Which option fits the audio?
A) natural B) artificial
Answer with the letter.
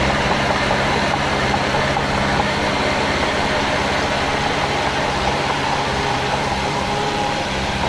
B